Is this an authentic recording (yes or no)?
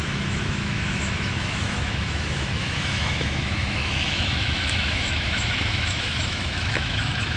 no